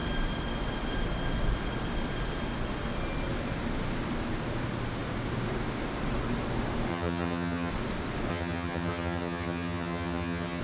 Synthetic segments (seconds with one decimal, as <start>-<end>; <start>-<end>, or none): 6.9-7.7; 8.3-10.6